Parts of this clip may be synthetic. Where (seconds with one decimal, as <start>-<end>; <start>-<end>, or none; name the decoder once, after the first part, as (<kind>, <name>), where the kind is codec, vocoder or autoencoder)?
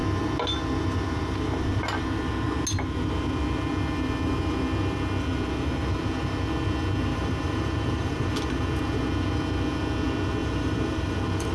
7.1-8.7 (vocoder, BigVGAN v2); 10.4-11.5